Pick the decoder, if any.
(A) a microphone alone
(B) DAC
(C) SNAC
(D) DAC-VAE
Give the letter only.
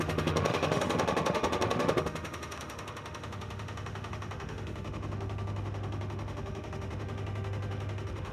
D